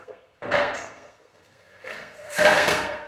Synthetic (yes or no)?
yes